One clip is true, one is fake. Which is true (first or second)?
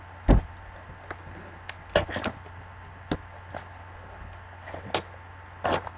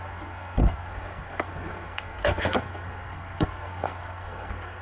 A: first